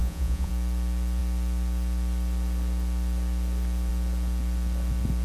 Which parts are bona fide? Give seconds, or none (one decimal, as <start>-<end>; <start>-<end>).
0.5-5.2

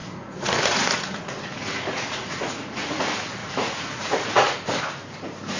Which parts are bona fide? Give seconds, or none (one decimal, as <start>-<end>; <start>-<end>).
3.0-3.4; 4.8-5.6